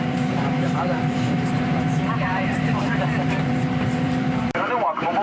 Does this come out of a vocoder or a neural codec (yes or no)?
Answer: yes